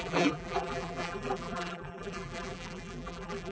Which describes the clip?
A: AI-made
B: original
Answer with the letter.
A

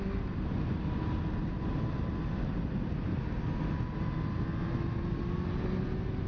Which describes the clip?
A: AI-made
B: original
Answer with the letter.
B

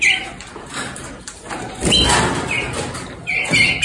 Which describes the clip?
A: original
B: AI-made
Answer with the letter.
A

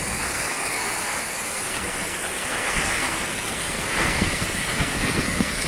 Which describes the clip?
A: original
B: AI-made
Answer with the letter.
B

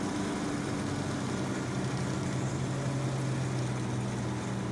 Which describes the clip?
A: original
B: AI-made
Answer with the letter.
A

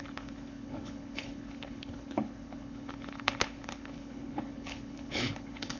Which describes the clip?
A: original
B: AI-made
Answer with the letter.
B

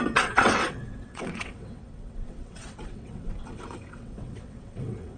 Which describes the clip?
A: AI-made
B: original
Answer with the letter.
A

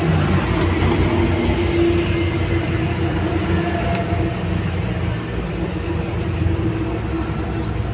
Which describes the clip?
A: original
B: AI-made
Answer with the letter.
A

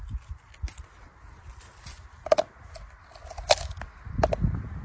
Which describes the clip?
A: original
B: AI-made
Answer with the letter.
A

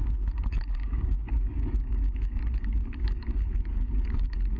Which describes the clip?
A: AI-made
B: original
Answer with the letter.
A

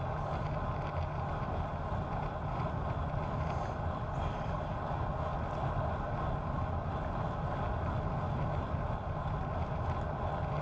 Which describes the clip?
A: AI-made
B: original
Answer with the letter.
B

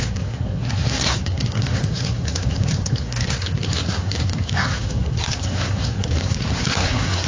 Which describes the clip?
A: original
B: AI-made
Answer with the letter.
B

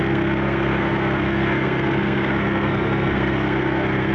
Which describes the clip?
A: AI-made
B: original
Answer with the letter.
A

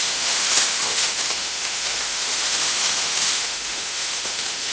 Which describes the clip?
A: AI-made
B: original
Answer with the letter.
A